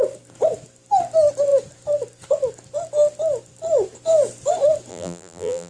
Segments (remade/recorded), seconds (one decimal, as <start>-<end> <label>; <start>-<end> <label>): 0.0-4.9 recorded; 4.9-5.7 remade